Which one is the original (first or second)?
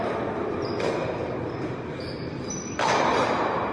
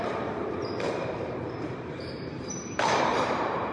first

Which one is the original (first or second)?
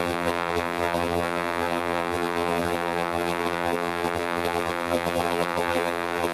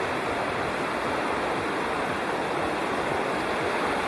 second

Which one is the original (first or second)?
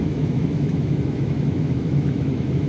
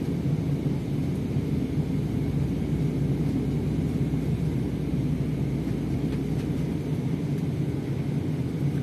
second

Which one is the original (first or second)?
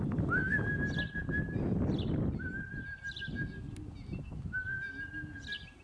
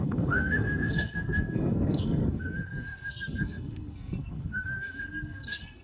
first